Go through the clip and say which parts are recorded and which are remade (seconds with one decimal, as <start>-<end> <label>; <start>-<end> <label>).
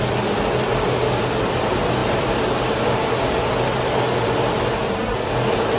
0.0-5.8 recorded